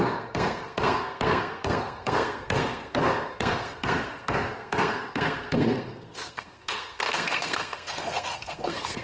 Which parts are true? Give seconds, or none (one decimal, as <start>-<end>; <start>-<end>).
none